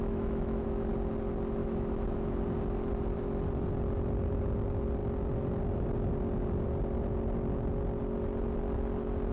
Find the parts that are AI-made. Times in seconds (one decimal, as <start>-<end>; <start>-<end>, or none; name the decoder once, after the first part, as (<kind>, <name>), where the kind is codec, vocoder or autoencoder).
0.0-0.9 (autoencoder, DAC-VAE); 1.6-2.4